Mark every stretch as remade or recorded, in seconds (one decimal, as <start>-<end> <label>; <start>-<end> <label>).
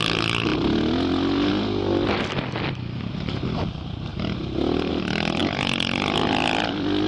0.0-7.1 recorded